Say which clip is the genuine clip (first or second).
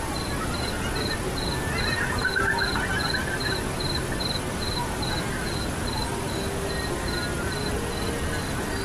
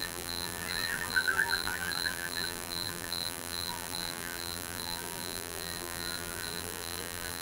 first